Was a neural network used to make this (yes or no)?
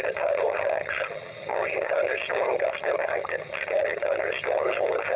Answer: yes